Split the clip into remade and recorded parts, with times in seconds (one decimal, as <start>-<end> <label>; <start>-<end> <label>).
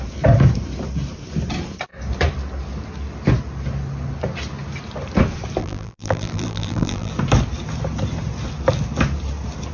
0.0-5.6 recorded; 5.6-7.1 remade; 7.1-9.7 recorded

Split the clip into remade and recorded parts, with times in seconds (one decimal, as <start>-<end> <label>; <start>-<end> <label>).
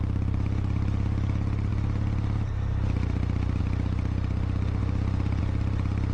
0.0-6.1 recorded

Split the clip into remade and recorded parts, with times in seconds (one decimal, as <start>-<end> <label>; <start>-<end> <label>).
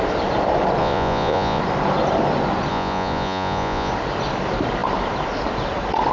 0.0-0.8 recorded; 0.8-1.6 remade; 1.6-2.7 recorded; 2.7-3.9 remade; 3.9-6.1 recorded